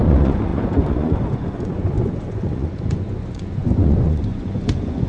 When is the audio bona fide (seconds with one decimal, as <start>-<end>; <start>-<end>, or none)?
none